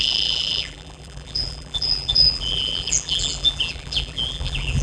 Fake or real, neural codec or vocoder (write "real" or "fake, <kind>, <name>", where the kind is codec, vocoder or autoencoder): fake, vocoder, BigVGAN v2